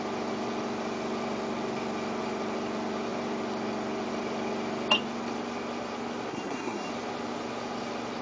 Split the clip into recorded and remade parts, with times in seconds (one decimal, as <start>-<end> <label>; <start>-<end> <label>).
0.0-6.3 recorded; 6.3-6.9 remade; 6.9-8.2 recorded